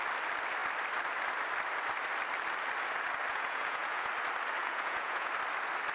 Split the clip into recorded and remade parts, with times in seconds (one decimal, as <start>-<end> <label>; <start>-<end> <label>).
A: 0.0-3.3 recorded; 3.3-4.1 remade; 4.1-4.6 recorded; 4.6-5.3 remade; 5.3-5.9 recorded